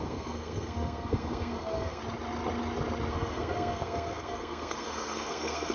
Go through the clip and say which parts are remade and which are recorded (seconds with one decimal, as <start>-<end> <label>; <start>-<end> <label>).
0.0-2.0 remade; 2.0-3.1 recorded; 3.1-5.7 remade